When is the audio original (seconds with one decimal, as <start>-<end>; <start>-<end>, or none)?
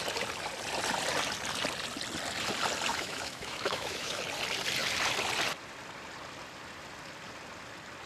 0.0-2.9; 4.2-8.1